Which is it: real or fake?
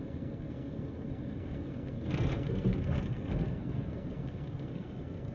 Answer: fake